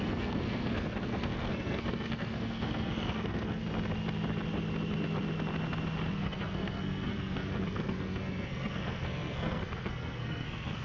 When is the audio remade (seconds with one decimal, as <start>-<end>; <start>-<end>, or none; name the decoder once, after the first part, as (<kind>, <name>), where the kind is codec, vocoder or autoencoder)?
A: 0.0-3.6 (codec, SNAC); 6.1-10.8